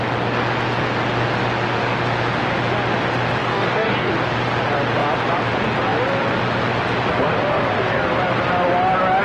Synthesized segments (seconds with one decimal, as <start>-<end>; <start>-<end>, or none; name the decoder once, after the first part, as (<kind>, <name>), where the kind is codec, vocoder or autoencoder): 3.4-4.1 (codec, DAC)